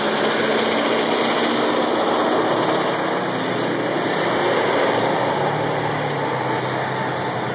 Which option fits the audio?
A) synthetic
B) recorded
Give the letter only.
B